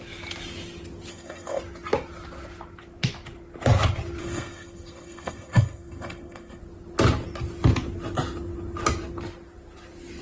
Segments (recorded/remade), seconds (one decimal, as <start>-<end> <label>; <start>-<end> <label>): 0.0-1.1 recorded; 1.1-1.6 remade; 1.6-4.2 recorded; 4.2-6.6 remade; 6.6-10.2 recorded